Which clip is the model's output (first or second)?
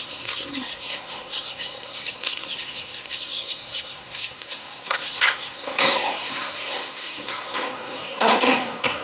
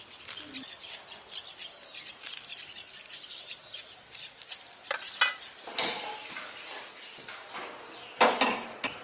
first